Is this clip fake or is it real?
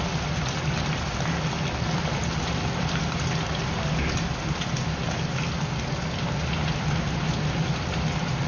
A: real